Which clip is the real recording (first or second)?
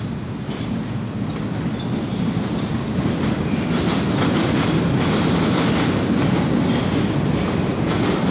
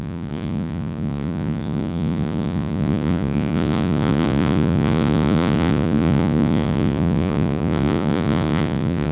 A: first